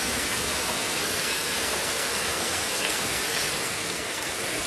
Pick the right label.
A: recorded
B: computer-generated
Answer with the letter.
B